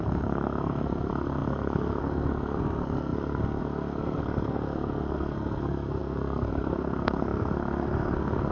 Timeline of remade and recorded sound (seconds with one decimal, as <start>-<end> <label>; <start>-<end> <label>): 0.0-8.5 remade